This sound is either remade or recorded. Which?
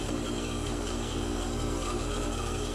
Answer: remade